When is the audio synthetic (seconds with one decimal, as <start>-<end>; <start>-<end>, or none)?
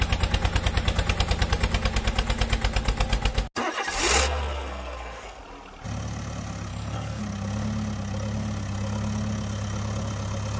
4.2-5.4; 6.7-7.2